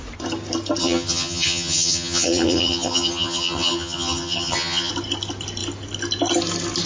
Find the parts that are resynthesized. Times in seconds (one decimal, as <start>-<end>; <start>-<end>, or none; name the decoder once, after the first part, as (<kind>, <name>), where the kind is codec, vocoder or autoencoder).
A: 0.8-4.9 (vocoder, HiFi-GAN)